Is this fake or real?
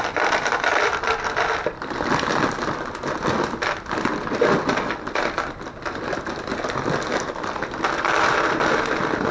real